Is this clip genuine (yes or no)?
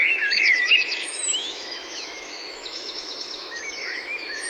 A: no